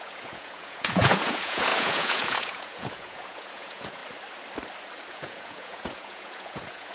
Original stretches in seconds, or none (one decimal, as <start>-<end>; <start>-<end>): 4.0-5.1